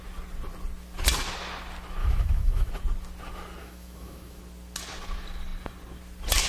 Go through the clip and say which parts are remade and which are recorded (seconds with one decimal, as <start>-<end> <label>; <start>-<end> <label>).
0.0-2.0 recorded; 2.0-2.7 remade; 2.7-3.6 recorded; 3.6-4.4 remade; 4.4-6.5 recorded